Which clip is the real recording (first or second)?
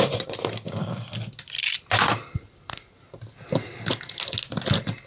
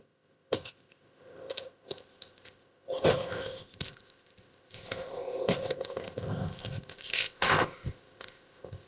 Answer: first